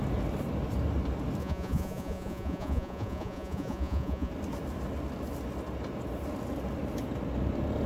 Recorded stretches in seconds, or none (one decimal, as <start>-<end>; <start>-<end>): 0.0-1.4; 4.3-7.9